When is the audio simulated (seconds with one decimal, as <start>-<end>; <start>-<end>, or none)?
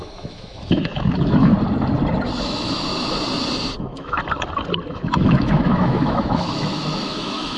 0.0-1.5; 2.4-2.9; 3.8-4.2; 4.9-7.6